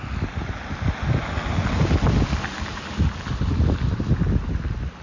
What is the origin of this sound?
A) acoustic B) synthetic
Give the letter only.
A